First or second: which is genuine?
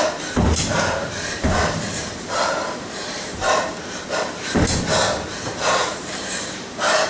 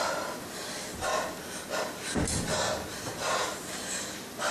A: second